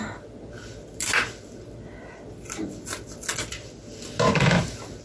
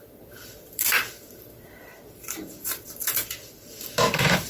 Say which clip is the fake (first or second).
second